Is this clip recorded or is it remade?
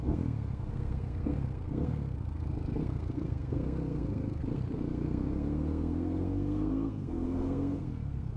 remade